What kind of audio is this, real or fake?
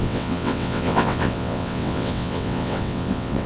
fake